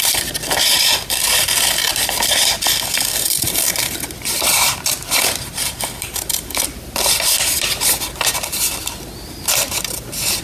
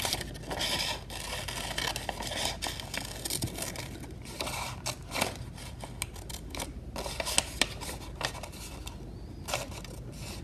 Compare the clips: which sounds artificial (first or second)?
first